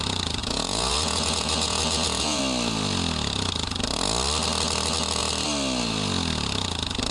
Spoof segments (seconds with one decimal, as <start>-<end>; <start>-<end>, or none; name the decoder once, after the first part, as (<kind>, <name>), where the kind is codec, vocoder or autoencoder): 0.4-2.4 (vocoder, Vocos)